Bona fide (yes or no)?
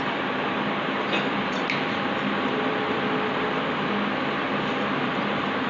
yes